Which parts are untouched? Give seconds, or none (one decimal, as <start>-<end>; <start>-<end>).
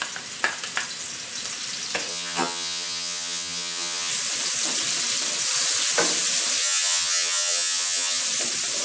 0.0-2.1; 4.1-6.6; 8.2-8.8